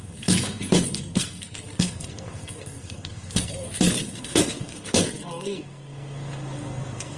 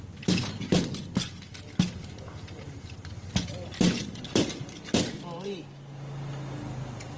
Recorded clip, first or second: second